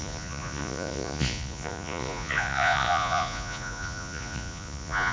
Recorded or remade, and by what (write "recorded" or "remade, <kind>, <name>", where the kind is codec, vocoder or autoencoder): remade, vocoder, Vocos